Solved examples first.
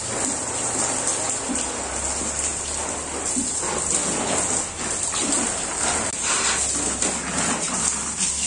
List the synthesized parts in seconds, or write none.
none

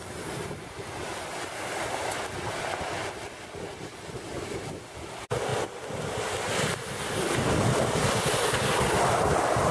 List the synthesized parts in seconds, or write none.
none

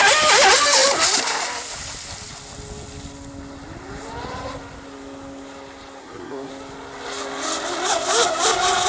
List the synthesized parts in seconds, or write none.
6.0-6.5 (codec, SNAC)

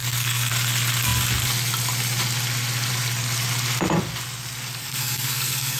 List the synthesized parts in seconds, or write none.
0.0-0.5 (codec, SNAC); 4.8-5.8

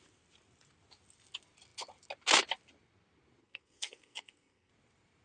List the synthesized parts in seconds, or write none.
3.4-4.7 (codec, SNAC)